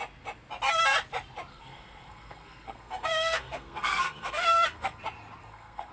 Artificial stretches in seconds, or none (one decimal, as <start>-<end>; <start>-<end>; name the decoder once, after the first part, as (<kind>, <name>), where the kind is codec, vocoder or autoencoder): 1.5-5.0 (codec, SNAC); 5.4-5.9